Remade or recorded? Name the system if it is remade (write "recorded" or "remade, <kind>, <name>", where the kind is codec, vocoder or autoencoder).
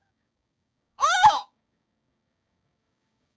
remade, codec, DAC